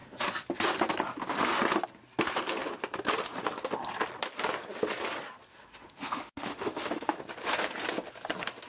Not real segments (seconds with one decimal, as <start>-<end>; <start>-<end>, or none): 5.5-7.2